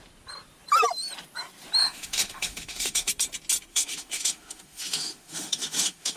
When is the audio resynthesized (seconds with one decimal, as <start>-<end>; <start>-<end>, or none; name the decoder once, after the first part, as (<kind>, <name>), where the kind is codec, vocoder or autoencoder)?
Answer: 1.8-3.1 (autoencoder, DAC-VAE); 3.7-6.2

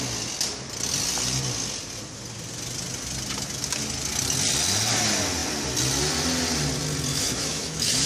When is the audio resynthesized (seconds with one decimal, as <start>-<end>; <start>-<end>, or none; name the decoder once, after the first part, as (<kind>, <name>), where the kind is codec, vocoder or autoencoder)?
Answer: 7.1-8.1 (autoencoder, DAC-VAE)

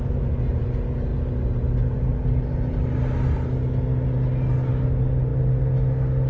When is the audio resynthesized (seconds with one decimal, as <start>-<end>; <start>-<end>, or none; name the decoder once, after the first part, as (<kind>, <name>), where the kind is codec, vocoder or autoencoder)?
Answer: none

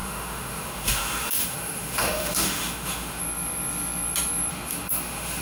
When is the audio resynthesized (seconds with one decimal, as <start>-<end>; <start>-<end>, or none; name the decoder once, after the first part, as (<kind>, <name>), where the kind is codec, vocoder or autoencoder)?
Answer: 0.0-3.2 (autoencoder, DAC-VAE); 4.5-5.4

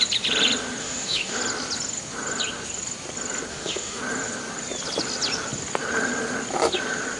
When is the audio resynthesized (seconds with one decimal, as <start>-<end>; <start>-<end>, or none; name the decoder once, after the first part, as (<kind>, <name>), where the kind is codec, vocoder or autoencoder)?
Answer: 0.8-1.4 (autoencoder, DAC-VAE); 3.5-4.0

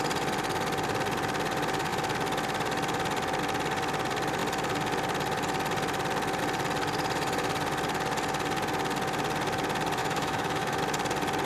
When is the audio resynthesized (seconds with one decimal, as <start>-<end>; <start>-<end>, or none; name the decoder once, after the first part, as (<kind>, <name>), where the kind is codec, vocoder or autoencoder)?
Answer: 10.0-10.8 (autoencoder, DAC-VAE)